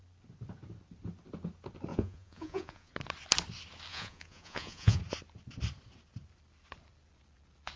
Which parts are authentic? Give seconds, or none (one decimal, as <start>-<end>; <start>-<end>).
0.0-1.9; 2.9-3.9; 5.0-7.8